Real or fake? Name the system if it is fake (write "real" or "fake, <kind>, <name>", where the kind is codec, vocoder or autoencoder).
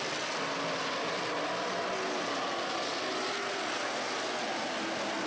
real